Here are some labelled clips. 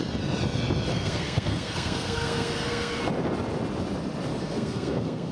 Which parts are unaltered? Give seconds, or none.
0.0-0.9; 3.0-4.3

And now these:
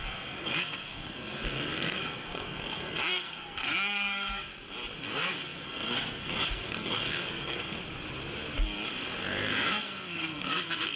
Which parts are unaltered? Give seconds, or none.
4.5-5.0; 7.8-9.2

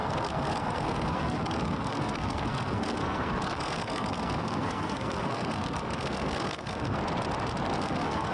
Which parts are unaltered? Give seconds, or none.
7.0-7.8

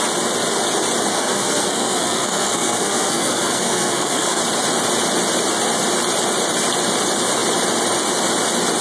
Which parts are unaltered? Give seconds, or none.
0.0-1.1; 4.4-8.8

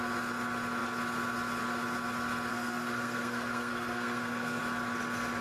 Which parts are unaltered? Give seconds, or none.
0.0-2.5; 4.6-5.4

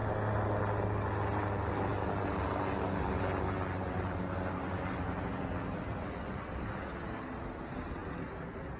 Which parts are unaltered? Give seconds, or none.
0.0-8.8